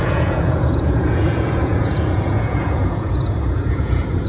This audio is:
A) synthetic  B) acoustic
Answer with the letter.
A